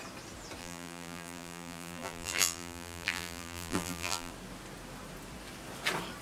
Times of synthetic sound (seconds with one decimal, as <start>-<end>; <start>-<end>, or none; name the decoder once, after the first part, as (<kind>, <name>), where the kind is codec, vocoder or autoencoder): 0.6-4.3 (vocoder, BigVGAN v2)